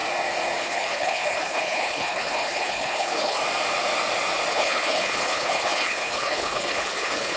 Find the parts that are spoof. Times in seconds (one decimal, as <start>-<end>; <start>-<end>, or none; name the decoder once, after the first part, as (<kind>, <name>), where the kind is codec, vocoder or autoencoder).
0.6-3.4 (codec, HILCodec); 4.5-7.4